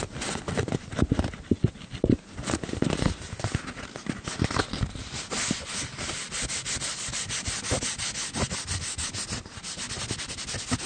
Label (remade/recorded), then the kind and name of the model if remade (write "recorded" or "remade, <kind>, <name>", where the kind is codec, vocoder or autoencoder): recorded